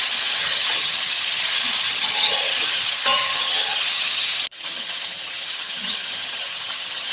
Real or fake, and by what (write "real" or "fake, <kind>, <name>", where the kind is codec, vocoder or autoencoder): fake, vocoder, HiFi-GAN